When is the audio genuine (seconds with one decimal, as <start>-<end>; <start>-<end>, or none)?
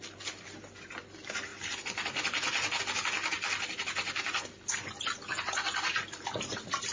0.0-6.9